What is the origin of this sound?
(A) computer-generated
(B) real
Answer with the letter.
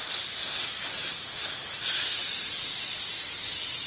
B